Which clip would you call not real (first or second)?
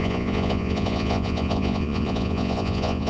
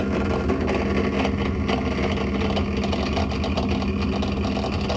first